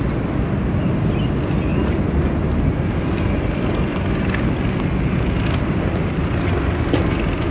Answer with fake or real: real